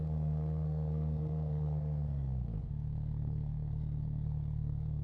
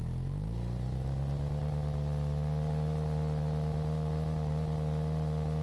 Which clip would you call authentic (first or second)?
second